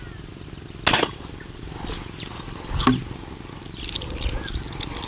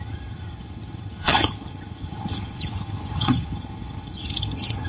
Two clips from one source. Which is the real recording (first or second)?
first